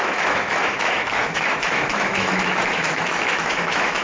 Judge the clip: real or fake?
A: fake